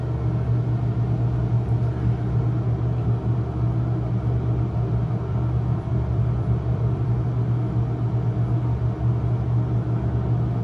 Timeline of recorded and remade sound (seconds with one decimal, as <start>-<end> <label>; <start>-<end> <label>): 0.0-5.0 recorded; 5.0-7.3 remade; 7.3-10.6 recorded